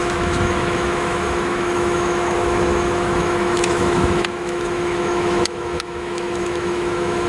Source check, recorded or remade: remade